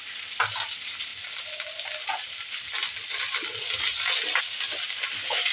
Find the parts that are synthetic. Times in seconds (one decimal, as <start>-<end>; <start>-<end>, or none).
none